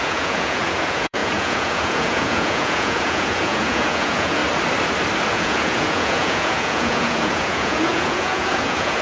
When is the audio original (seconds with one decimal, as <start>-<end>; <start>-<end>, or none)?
4.4-5.3